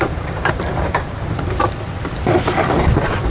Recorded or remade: remade